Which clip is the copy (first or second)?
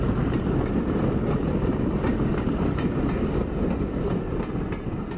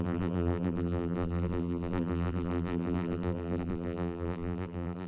second